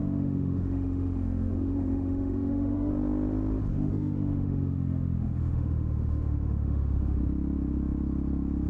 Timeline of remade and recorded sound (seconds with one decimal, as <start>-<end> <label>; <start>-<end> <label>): 0.0-2.9 remade; 2.9-3.7 recorded; 3.7-7.2 remade; 7.2-8.7 recorded